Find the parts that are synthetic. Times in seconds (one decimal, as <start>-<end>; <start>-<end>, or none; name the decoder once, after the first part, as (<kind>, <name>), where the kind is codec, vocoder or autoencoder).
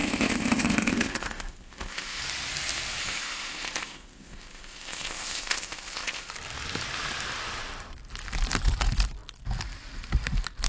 0.0-2.2 (codec, ZipCodec); 3.0-6.3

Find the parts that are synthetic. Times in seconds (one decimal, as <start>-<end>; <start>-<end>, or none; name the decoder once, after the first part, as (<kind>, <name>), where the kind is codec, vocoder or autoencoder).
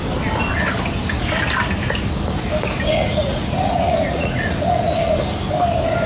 2.9-5.1 (vocoder, Vocos)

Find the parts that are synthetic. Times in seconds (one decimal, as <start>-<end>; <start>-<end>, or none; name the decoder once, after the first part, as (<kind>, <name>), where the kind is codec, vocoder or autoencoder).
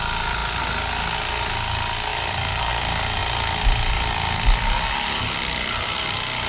2.1-2.7 (vocoder, BigVGAN v2)